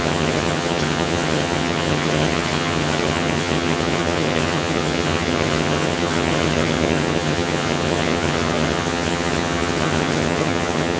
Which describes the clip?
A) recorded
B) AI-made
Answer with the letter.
B